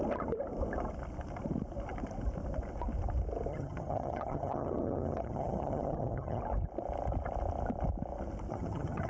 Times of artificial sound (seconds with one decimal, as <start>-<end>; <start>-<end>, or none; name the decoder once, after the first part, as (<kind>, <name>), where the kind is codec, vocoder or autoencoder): 3.5-6.4 (vocoder, HiFi-GAN); 8.5-9.1